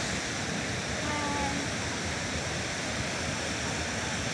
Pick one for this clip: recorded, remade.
recorded